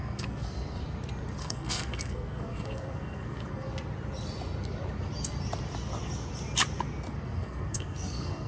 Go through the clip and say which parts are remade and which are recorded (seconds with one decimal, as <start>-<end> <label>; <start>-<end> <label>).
0.0-0.8 remade; 0.8-1.4 recorded; 1.4-3.7 remade; 3.7-7.1 recorded; 7.1-8.5 remade